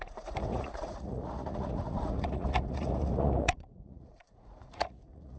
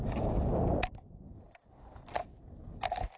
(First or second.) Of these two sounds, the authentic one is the second